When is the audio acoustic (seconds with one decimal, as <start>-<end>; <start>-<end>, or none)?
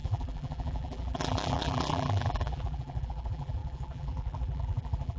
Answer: none